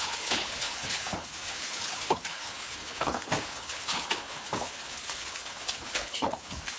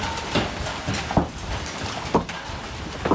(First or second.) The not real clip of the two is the first